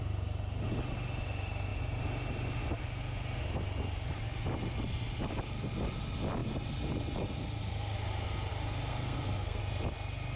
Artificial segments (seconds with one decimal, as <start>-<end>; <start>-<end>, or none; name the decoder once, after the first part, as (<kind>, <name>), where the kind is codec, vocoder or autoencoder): 8.9-9.6 (codec, SNAC)